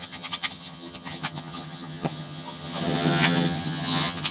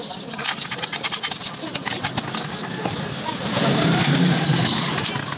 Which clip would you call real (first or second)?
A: second